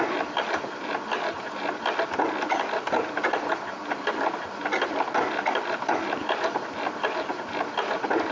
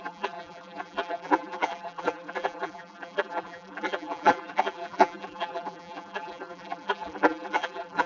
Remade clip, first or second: second